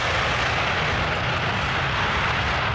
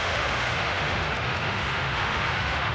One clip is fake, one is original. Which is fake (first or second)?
second